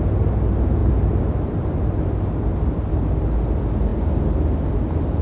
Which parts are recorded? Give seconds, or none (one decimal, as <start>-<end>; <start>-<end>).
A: 0.0-0.8; 2.9-5.2